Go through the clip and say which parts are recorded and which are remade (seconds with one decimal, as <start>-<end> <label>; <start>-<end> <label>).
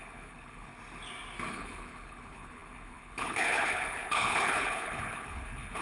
0.0-0.7 remade; 0.7-1.5 recorded; 1.5-5.8 remade